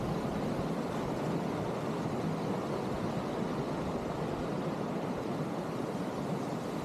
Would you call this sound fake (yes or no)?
no